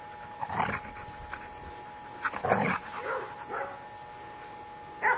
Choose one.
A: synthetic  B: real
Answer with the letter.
B